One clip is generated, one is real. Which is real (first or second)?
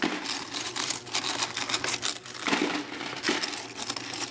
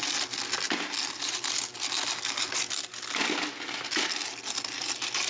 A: second